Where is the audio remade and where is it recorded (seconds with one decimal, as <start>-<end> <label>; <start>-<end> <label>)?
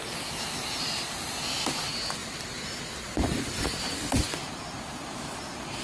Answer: 0.0-2.2 recorded; 2.2-5.8 remade